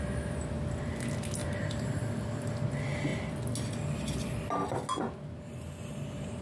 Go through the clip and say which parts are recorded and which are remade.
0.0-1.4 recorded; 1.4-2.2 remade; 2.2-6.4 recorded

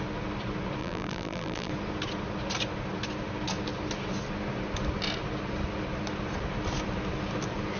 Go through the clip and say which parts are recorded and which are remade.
0.0-0.8 recorded; 0.8-1.7 remade; 1.7-7.8 recorded

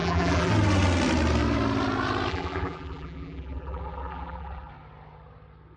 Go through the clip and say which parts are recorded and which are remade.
0.0-0.5 remade; 0.5-2.3 recorded; 2.3-4.7 remade; 4.7-5.8 recorded

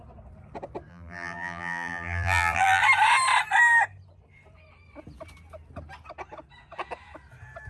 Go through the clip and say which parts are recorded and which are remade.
0.0-0.9 recorded; 0.9-2.8 remade; 2.8-7.7 recorded

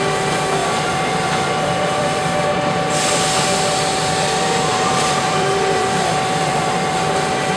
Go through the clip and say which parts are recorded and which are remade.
0.0-0.6 recorded; 0.6-2.2 remade; 2.2-3.9 recorded; 3.9-6.9 remade; 6.9-7.6 recorded